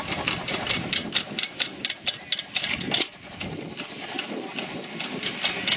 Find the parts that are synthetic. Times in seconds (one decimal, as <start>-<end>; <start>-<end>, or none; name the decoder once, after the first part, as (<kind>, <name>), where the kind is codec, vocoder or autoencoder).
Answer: none